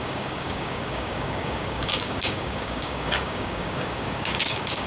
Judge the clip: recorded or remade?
remade